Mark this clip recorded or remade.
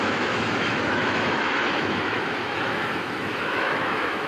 remade